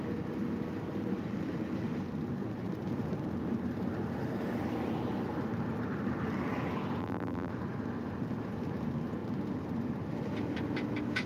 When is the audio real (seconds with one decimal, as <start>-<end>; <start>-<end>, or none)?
0.0-7.0; 7.5-11.3

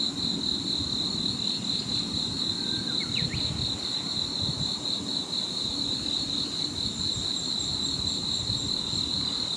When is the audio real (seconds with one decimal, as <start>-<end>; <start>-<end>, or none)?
0.0-3.9; 8.4-9.6